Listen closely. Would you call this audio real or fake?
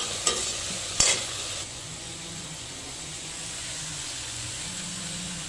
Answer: fake